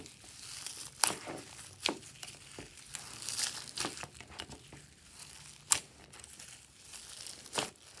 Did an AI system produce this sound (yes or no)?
no